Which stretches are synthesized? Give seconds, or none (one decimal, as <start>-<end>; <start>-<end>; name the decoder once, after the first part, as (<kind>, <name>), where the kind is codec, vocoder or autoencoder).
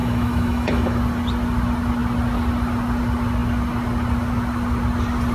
0.0-1.0 (autoencoder, DAC-VAE)